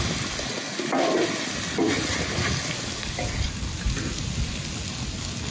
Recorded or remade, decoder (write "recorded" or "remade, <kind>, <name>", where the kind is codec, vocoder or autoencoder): recorded